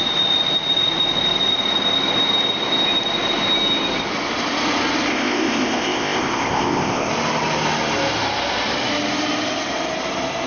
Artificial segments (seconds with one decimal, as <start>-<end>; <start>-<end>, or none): 5.1-7.1